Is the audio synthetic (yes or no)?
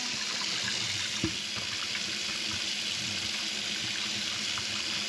no